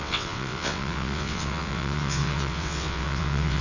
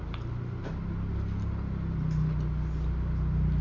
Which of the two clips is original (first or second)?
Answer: second